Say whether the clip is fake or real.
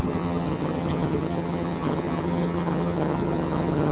fake